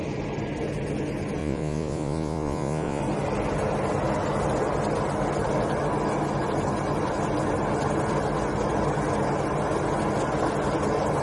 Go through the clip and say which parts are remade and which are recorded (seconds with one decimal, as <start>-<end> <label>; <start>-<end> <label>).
0.0-1.4 recorded; 1.4-3.0 remade; 3.0-11.2 recorded